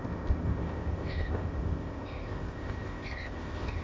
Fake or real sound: fake